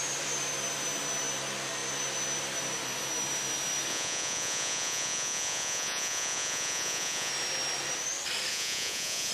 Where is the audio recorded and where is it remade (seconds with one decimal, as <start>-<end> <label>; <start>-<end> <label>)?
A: 0.0-3.9 recorded; 3.9-7.3 remade; 7.3-8.5 recorded; 8.5-9.3 remade